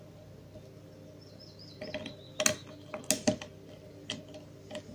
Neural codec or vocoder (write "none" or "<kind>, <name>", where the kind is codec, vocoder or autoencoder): none